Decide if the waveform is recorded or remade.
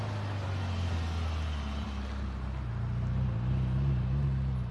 recorded